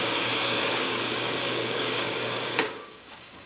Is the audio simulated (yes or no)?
yes